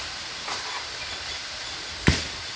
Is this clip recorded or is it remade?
recorded